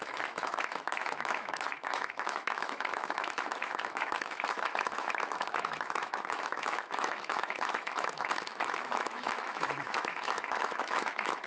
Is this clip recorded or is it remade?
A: remade